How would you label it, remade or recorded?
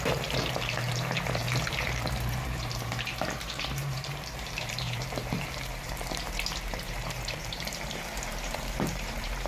remade